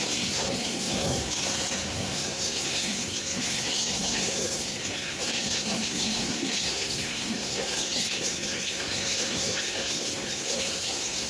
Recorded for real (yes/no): no